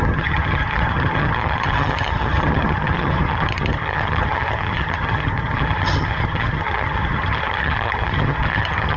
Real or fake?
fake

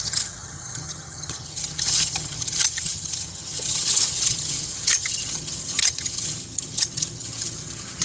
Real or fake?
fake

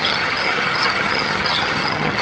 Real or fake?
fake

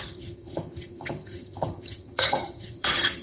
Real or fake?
fake